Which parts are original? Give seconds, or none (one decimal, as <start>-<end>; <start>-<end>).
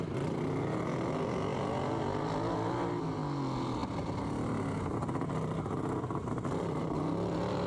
0.0-7.7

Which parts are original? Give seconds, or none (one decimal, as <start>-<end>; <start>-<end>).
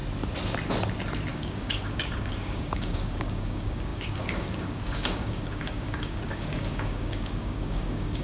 0.0-1.3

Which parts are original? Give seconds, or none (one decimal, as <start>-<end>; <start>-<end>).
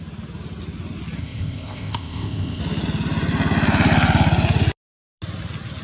0.0-1.2; 2.6-5.8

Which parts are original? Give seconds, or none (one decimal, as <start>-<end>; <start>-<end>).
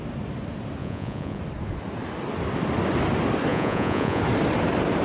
0.0-0.8; 1.4-3.5; 4.2-5.0